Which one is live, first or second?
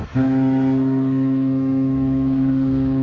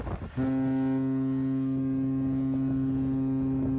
second